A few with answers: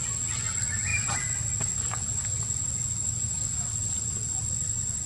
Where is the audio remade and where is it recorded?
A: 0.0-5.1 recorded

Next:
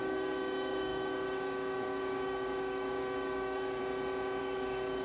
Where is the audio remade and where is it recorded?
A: 0.0-3.8 remade; 3.8-4.4 recorded; 4.4-5.0 remade